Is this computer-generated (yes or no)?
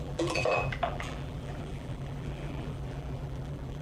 yes